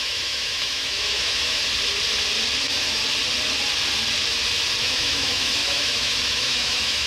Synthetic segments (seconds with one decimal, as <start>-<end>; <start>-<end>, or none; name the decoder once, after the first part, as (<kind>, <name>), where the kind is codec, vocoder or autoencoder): 0.0-1.6 (autoencoder, DAC-VAE); 2.6-3.0; 4.8-7.1